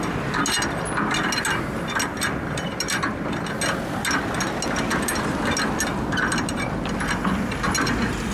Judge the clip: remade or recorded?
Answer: recorded